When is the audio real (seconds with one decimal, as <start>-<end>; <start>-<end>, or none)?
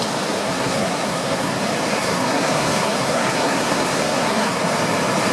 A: 0.0-0.4; 1.5-1.9; 4.6-5.3